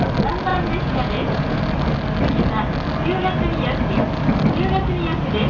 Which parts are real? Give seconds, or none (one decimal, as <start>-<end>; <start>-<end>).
0.0-0.5; 1.6-5.5